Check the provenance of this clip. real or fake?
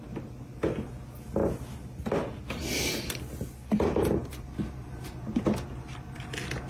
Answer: real